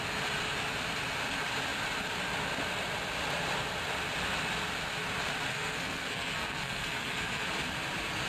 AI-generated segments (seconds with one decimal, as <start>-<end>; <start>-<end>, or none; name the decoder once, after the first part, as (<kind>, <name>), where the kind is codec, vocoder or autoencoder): 5.5-7.5 (codec, SNAC)